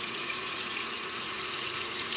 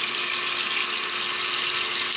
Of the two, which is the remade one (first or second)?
first